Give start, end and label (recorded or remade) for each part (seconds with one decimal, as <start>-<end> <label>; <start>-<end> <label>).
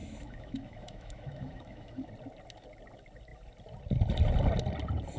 0.0-2.1 remade; 2.1-5.2 recorded